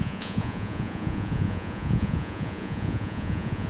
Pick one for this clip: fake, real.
fake